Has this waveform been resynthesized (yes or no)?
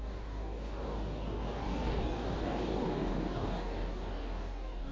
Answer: yes